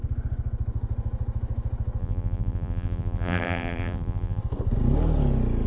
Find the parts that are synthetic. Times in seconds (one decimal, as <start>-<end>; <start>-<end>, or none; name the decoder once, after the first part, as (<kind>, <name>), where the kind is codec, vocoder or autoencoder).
2.0-4.4 (vocoder, BigVGAN v2)

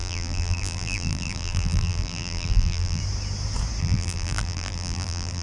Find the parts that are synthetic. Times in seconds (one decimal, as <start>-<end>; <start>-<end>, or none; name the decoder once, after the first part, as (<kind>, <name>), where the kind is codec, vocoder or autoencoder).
0.0-3.0 (vocoder, BigVGAN v2); 3.8-5.4

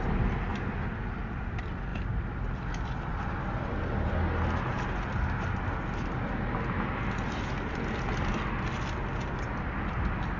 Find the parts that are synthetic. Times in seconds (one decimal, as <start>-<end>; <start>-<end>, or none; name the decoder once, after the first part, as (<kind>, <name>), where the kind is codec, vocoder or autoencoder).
none

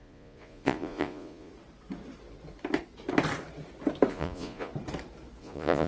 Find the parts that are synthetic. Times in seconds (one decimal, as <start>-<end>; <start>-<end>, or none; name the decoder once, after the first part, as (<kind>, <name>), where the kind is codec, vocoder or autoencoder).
0.0-1.5 (vocoder, Vocos); 4.1-4.7; 5.4-5.9

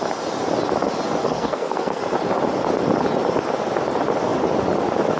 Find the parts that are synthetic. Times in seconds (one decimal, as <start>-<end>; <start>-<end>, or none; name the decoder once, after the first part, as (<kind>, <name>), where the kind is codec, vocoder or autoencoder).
1.2-2.0 (codec, SNAC)

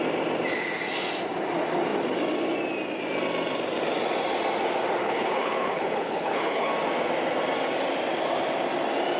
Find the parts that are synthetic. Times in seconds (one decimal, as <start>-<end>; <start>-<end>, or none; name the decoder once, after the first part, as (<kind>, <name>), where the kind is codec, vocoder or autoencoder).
5.0-6.7 (codec, HILCodec)